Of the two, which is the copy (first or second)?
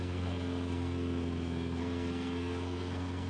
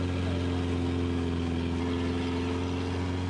first